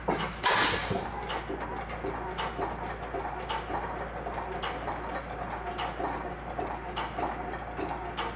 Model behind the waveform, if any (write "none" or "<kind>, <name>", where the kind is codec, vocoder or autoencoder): none